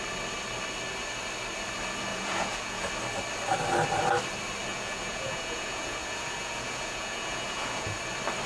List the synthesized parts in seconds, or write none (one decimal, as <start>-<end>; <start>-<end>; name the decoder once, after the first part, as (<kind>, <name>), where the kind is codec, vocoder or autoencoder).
2.1-2.9 (vocoder, Vocos); 4.7-8.0